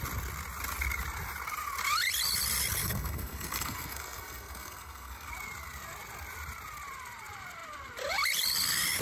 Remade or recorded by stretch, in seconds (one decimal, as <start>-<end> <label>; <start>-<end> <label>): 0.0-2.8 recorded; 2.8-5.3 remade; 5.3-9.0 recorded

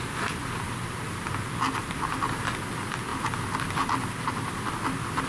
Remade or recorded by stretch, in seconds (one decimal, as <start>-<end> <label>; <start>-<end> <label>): 0.0-5.3 recorded

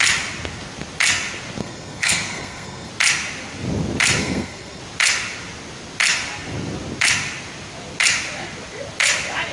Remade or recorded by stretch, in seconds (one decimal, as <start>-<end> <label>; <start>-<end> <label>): 0.0-1.6 recorded; 1.6-2.9 remade; 2.9-4.2 recorded; 4.2-4.8 remade; 4.8-9.5 recorded

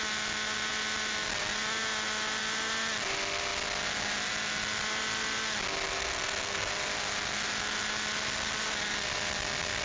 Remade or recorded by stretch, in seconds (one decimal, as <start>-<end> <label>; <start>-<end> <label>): 0.0-5.9 recorded; 5.9-6.7 remade; 6.7-9.8 recorded

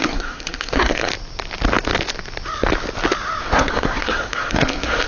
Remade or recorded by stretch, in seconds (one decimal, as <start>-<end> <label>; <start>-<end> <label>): 0.0-1.1 remade; 1.1-3.4 recorded; 3.4-5.1 remade

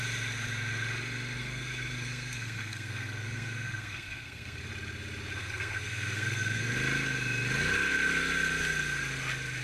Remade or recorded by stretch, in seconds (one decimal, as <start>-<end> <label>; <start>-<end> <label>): 0.0-1.4 recorded; 1.4-4.6 remade; 4.6-5.4 recorded; 5.4-6.7 remade; 6.7-9.6 recorded

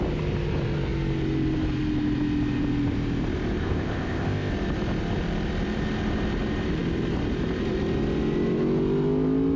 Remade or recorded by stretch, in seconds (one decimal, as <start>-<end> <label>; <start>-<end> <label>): 0.0-3.6 recorded; 3.6-4.5 remade; 4.5-9.6 recorded

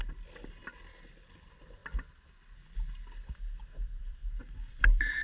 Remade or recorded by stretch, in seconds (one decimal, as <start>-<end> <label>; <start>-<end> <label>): 0.0-0.6 remade; 0.6-1.3 recorded; 1.3-1.8 remade; 1.8-3.7 recorded; 3.7-4.2 remade; 4.2-4.8 recorded; 4.8-5.2 remade